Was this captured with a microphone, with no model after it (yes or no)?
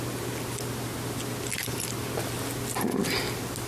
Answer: yes